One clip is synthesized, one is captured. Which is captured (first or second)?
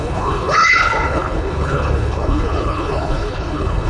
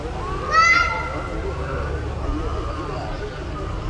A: second